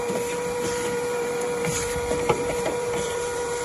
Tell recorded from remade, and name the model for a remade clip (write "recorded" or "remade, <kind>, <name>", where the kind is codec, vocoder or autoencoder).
remade, vocoder, BigVGAN v2